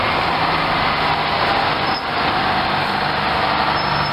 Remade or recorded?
recorded